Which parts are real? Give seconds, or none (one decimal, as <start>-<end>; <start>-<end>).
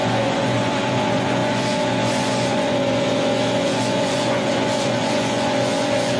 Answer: none